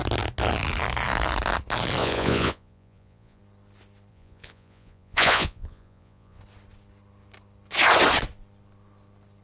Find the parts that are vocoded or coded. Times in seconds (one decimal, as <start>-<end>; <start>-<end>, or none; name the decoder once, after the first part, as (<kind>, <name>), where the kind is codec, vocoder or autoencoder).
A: 2.0-3.4 (vocoder, Vocos); 4.1-6.4